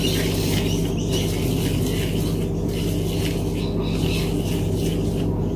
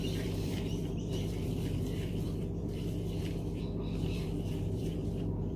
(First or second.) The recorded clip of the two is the first